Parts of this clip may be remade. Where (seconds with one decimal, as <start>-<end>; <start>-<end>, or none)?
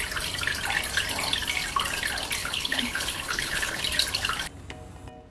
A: 2.4-3.8